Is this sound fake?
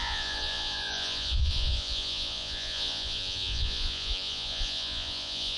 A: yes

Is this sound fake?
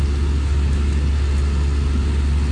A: no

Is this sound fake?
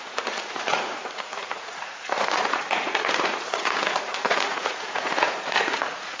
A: yes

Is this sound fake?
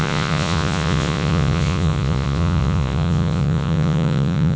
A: yes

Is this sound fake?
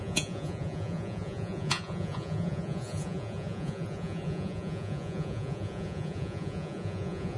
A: yes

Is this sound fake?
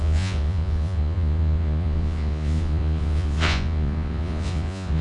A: yes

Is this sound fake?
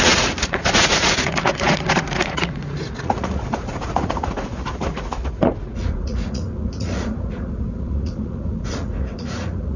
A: yes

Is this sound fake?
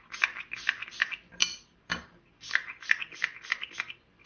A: no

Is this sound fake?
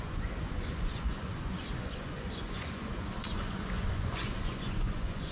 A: yes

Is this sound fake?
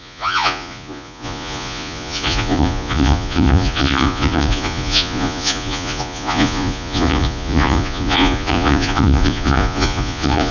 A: yes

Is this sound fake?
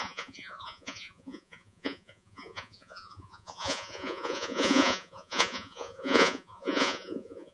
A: yes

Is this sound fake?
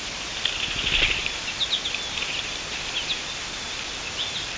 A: no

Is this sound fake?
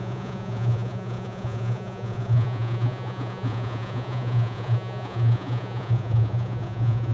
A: yes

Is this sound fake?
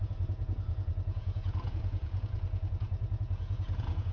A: yes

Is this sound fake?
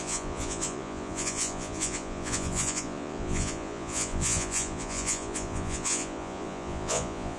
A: yes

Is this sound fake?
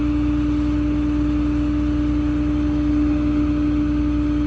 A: no